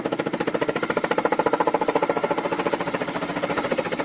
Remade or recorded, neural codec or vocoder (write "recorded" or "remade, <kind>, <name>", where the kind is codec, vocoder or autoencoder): recorded